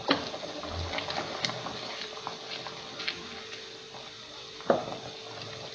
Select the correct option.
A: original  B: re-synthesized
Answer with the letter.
A